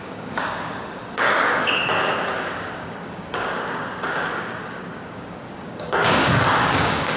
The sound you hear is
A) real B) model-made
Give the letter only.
B